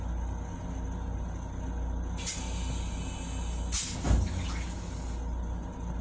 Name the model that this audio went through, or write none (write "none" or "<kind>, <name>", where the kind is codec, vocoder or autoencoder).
none